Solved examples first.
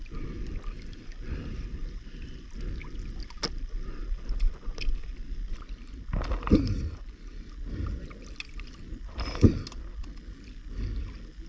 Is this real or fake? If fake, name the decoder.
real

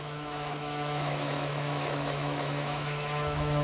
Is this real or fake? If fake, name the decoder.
fake, autoencoder, DAC-VAE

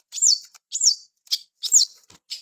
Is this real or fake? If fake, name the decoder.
real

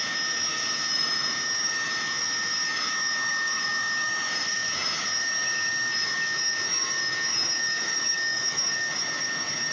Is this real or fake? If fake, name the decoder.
fake, autoencoder, DAC-VAE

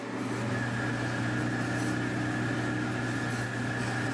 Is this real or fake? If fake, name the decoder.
real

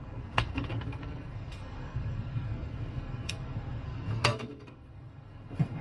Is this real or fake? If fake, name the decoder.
fake, codec, SNAC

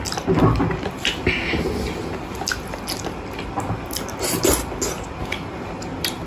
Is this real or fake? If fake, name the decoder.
real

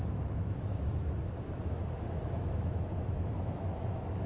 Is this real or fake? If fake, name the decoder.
fake, autoencoder, DAC-VAE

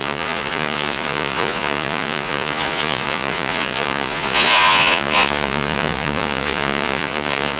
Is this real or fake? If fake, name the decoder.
fake, vocoder, Vocos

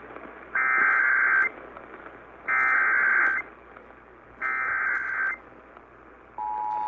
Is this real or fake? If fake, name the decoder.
real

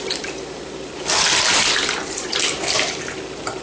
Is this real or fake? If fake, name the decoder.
real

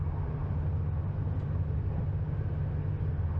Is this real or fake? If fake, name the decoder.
real